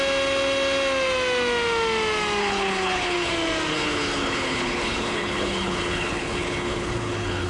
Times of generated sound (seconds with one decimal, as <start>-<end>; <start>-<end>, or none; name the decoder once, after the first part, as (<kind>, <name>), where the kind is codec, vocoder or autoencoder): 2.4-3.3 (codec, HILCodec); 3.7-7.5